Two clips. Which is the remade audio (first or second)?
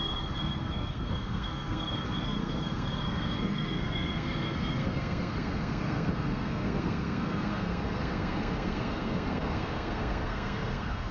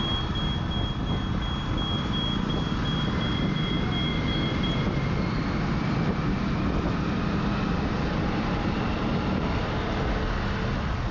first